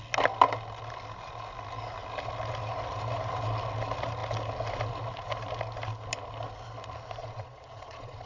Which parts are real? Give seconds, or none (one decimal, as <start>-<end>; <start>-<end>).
0.0-7.2